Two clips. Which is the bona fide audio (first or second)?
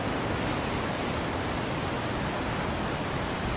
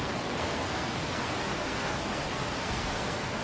first